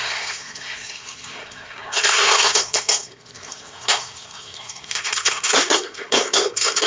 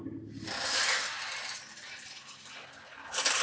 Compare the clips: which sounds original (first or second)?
second